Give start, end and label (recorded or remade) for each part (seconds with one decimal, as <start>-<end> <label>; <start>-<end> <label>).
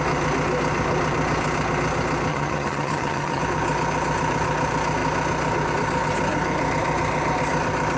0.0-2.3 recorded; 2.3-3.4 remade; 3.4-8.0 recorded